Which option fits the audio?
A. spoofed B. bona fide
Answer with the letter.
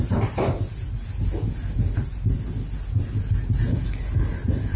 B